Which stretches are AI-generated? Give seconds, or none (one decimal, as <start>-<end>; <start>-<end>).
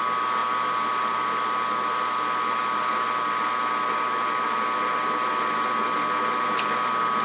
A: none